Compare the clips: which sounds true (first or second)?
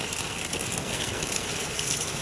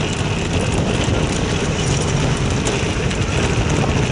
second